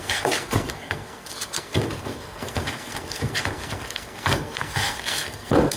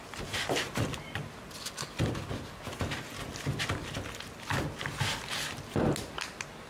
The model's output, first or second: first